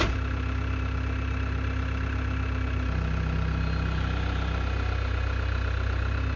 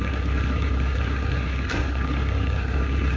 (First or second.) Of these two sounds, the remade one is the second